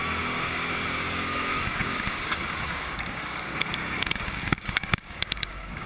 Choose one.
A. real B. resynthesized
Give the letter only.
B